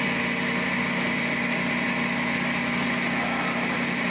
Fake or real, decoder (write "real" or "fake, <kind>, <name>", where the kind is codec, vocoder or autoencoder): real